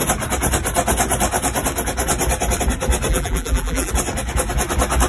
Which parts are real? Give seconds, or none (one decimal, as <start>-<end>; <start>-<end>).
0.0-3.1; 3.9-5.1